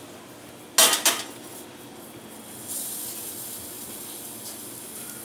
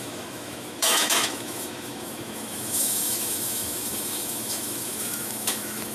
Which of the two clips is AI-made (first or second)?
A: second